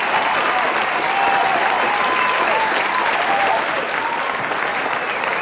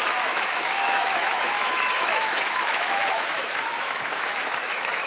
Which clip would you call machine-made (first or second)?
second